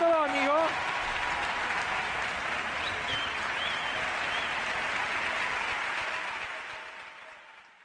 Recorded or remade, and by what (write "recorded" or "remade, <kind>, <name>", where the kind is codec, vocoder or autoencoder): recorded